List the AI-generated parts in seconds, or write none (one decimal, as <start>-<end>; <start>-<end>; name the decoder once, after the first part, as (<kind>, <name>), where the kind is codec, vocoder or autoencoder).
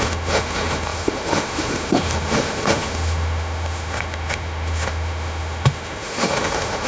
0.0-6.9 (autoencoder, DAC-VAE)